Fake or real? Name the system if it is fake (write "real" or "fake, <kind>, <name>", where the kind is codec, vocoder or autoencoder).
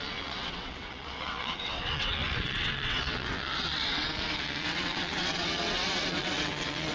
fake, vocoder, WaveNeXt